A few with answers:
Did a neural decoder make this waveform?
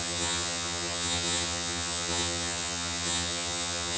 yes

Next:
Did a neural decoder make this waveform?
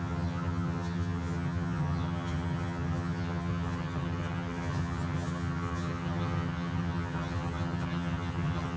yes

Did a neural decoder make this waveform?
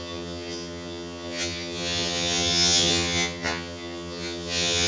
yes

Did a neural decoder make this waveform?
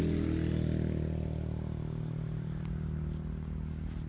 no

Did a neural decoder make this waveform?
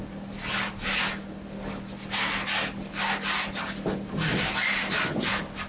no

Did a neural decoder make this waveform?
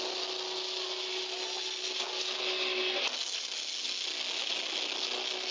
no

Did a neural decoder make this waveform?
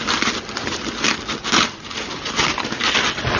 no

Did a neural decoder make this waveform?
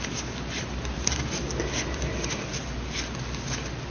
no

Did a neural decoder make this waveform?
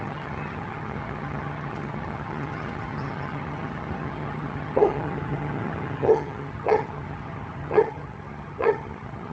yes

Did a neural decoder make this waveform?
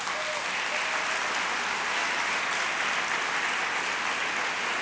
no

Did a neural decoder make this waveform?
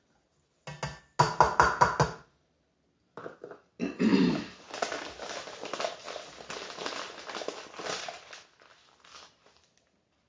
no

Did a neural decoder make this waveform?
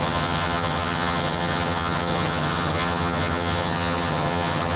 yes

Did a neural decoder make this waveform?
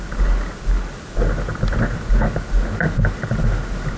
no